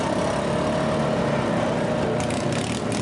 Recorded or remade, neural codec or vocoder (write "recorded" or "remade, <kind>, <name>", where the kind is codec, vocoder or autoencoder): recorded